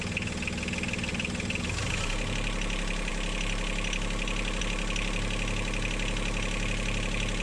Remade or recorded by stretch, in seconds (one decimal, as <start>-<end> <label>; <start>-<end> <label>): 0.0-1.1 recorded; 1.1-1.6 remade; 1.6-7.4 recorded